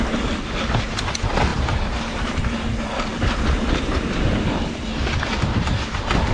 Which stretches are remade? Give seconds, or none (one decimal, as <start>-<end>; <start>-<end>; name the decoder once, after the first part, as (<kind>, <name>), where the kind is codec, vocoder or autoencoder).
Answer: 1.5-2.4 (vocoder, BigVGAN v2)